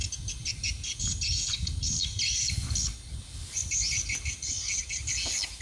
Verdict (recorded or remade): recorded